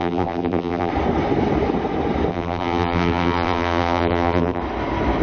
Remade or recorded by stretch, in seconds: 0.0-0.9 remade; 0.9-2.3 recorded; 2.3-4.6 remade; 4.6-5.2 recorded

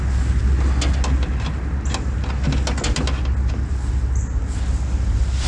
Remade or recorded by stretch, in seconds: 0.0-5.5 recorded

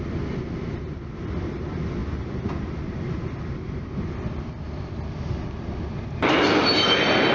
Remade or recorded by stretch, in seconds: 0.0-7.3 recorded

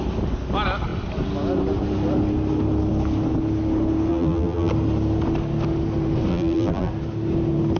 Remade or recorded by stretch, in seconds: 0.0-4.1 recorded; 4.1-4.7 remade; 4.7-6.3 recorded; 6.3-6.9 remade; 6.9-7.8 recorded

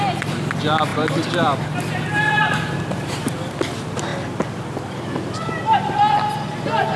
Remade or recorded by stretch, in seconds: 0.0-0.9 recorded; 0.9-3.5 remade; 3.5-4.1 recorded; 4.1-5.4 remade; 5.4-7.0 recorded

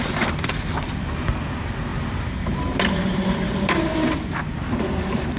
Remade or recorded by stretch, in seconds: 0.0-1.9 recorded; 1.9-5.4 remade

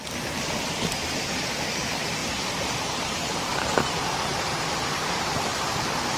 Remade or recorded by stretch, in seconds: 0.0-3.5 remade; 3.5-4.3 recorded; 4.3-5.5 remade; 5.5-6.2 recorded